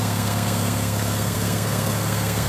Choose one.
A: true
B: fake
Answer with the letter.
B